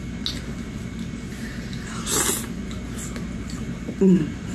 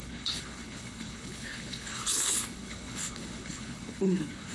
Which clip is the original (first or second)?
first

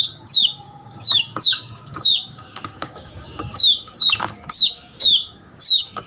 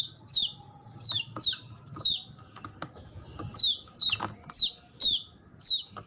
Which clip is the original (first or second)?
second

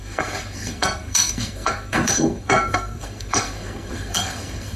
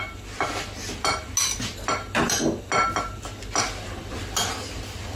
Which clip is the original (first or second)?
second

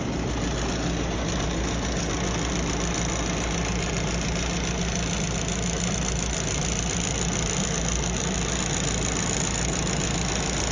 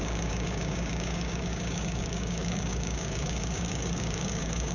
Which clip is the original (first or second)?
first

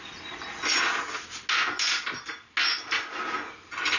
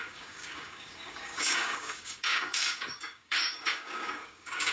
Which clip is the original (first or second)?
first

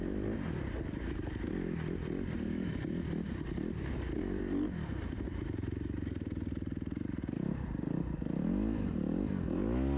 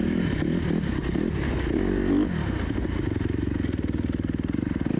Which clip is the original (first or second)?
second